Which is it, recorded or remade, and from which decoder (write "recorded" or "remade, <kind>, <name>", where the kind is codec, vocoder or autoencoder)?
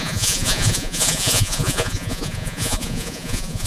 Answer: remade, vocoder, Vocos